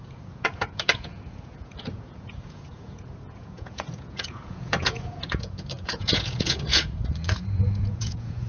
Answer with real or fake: fake